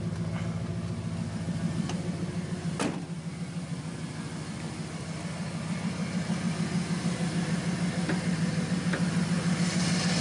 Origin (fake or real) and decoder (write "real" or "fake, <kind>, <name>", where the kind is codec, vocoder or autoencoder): real